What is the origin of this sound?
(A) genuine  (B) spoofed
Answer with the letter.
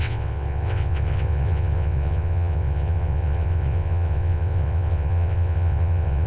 B